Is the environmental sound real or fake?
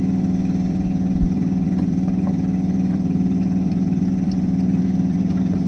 fake